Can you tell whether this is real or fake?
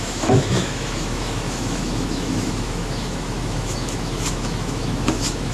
fake